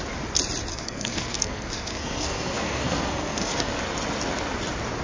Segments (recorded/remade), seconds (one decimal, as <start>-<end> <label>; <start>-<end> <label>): 0.0-0.7 recorded; 0.7-3.7 remade; 3.7-5.0 recorded

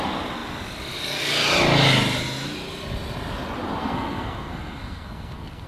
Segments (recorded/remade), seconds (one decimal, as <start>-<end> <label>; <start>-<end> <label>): 0.0-3.8 recorded; 3.8-5.7 remade

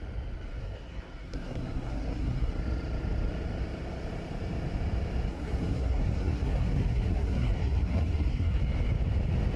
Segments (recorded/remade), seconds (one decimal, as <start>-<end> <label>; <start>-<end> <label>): 0.0-0.5 recorded; 0.5-2.5 remade; 2.5-5.3 recorded; 5.3-8.6 remade; 8.6-9.6 recorded

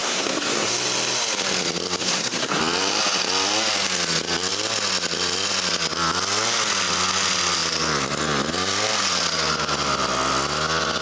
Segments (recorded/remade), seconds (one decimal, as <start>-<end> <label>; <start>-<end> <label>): 0.0-0.7 remade; 0.7-2.0 recorded; 2.0-2.6 remade; 2.6-11.0 recorded